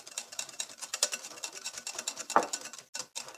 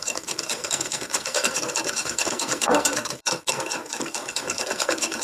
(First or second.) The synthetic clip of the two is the second